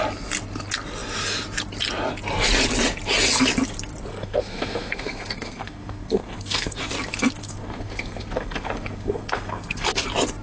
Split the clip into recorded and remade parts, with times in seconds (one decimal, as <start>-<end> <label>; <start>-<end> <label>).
0.0-4.1 recorded; 4.1-6.8 remade; 6.8-7.4 recorded; 7.4-10.0 remade; 10.0-10.4 recorded